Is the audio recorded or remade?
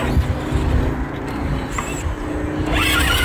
recorded